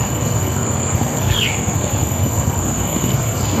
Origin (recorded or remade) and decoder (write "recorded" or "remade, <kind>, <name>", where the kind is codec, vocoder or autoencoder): remade, codec, SNAC